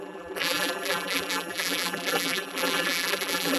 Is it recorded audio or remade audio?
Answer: remade